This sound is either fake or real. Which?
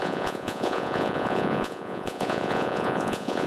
fake